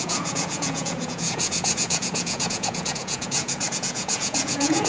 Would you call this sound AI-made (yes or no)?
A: yes